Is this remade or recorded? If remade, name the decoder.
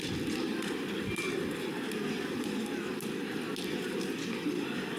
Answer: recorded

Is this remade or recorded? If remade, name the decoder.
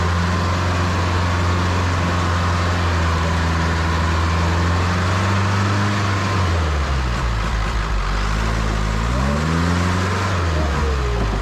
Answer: recorded